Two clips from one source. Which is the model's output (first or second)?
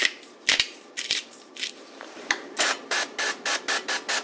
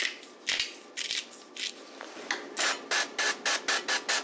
first